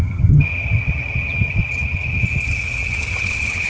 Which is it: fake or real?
fake